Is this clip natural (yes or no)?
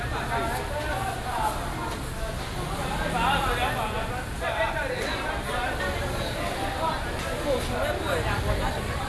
yes